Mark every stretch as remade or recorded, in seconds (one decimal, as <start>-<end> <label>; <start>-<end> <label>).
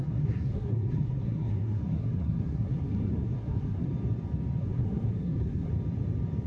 0.0-3.9 remade; 3.9-4.6 recorded; 4.6-5.7 remade; 5.7-6.5 recorded